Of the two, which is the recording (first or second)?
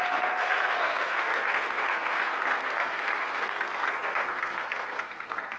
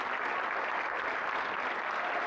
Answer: second